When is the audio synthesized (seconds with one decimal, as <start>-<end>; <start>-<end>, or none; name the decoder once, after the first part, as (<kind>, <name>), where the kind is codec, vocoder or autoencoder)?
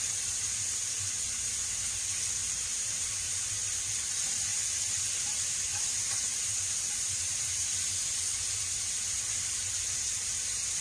0.0-1.5 (vocoder, BigVGAN v2); 2.5-7.6; 9.5-10.8